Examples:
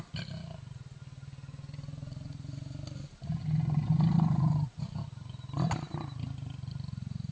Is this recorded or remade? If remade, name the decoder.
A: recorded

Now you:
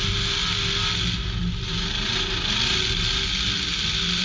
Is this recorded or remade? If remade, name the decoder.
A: recorded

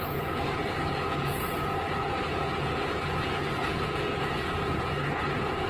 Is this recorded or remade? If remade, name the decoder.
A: remade, vocoder, Vocos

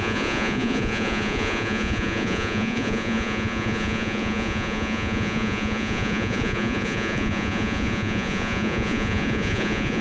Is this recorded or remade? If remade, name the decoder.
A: remade, vocoder, Vocos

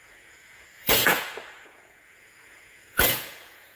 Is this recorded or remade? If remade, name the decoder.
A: remade, vocoder, Vocos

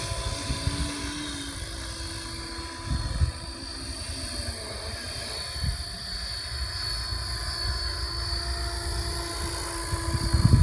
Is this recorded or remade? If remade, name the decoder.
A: recorded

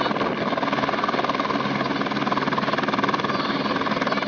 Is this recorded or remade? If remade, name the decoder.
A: recorded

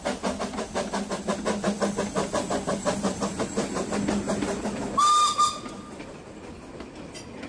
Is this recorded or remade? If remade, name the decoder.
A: recorded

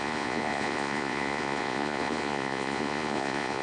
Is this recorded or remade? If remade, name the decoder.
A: remade, vocoder, Vocos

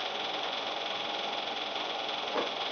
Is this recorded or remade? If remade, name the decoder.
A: remade, vocoder, Vocos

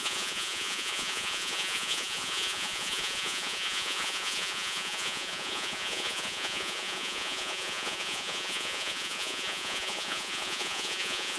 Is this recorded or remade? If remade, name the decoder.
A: remade, vocoder, Vocos